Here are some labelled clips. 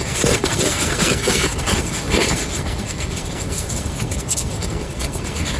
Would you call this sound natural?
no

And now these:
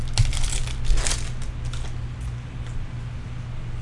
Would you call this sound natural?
yes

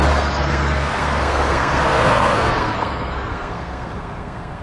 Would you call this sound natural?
no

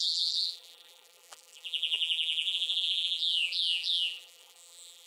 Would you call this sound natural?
no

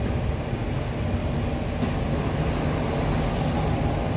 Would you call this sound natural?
yes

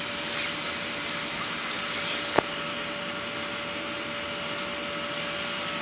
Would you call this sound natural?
yes